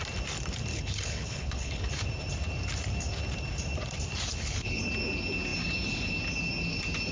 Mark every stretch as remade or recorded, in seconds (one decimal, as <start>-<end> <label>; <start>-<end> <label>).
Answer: 0.0-0.7 recorded; 0.7-1.9 remade; 1.9-4.3 recorded; 4.3-4.8 remade; 4.8-7.1 recorded